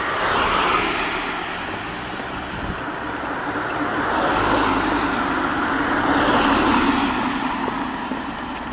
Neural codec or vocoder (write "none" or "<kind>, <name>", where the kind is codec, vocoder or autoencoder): none